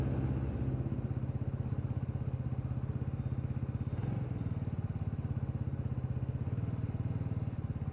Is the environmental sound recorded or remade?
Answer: recorded